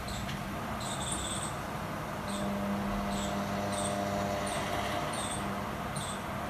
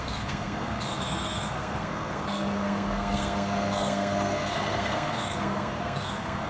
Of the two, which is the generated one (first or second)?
second